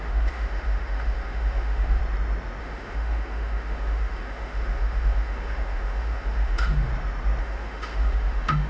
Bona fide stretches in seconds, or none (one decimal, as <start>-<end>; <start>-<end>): 2.0-2.6; 6.9-7.4